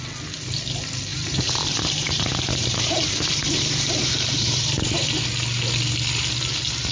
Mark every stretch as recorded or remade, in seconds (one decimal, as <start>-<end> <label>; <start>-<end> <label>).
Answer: 0.0-1.1 recorded; 1.1-5.2 remade; 5.2-6.9 recorded